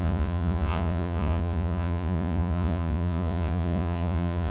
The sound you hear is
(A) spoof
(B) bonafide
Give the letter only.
A